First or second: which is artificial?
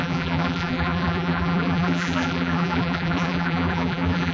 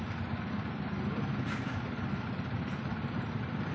first